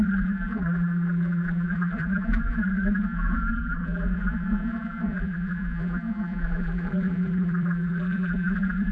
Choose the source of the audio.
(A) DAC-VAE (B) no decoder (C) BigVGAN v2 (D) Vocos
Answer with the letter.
C